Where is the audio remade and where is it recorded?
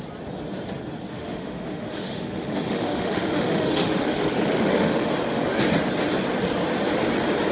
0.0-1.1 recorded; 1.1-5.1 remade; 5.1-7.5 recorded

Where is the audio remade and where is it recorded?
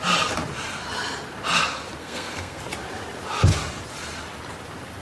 0.0-2.0 recorded; 2.0-2.6 remade; 2.6-5.0 recorded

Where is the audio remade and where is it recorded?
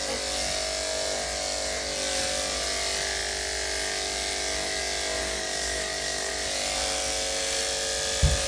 0.0-5.2 recorded; 5.2-6.3 remade; 6.3-8.5 recorded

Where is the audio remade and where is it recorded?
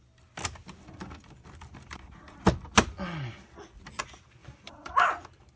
0.0-4.4 recorded; 4.4-5.0 remade; 5.0-5.6 recorded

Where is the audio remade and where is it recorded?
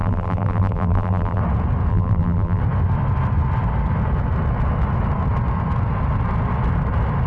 0.0-1.4 remade; 1.4-1.9 recorded; 1.9-2.6 remade; 2.6-7.3 recorded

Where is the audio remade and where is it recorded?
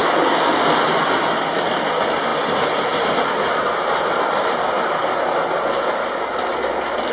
0.0-7.1 recorded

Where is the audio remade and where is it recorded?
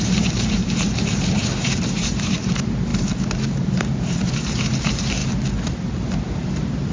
0.0-5.2 remade; 5.2-6.0 recorded; 6.0-6.9 remade